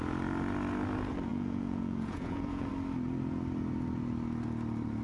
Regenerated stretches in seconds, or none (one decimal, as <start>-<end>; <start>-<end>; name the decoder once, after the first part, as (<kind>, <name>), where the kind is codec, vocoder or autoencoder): 1.3-2.7 (vocoder, Vocos)